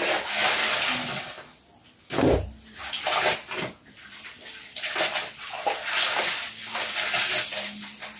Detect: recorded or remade recorded